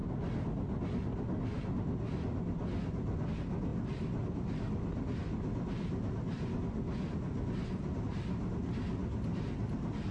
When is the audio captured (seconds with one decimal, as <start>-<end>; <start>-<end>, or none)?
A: 0.0-10.1